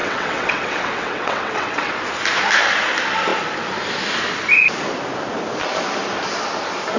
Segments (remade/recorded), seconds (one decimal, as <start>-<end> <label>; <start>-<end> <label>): 0.0-1.9 remade; 1.9-7.0 recorded